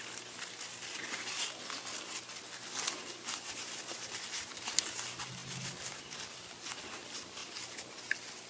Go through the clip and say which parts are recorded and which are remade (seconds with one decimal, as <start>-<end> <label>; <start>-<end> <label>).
0.0-8.5 recorded